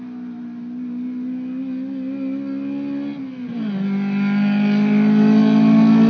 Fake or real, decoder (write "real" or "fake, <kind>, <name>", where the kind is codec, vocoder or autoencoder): real